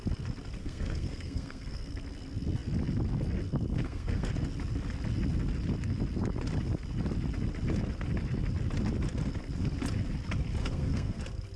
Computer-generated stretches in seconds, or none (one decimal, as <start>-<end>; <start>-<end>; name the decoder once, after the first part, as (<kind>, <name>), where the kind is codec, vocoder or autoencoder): 0.6-1.9 (codec, SNAC); 3.7-4.3; 10.6-11.2